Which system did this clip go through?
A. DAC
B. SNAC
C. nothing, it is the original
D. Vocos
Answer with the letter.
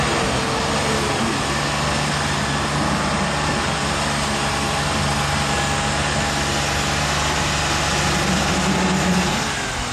C